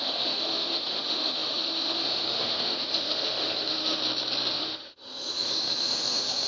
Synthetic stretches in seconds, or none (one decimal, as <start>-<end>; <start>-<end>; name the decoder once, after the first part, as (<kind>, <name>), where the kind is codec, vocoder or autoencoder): 0.0-4.0 (autoencoder, DAC-VAE); 4.5-6.5